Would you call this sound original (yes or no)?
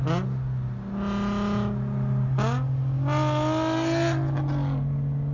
yes